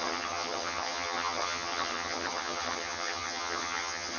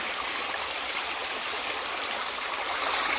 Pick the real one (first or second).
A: second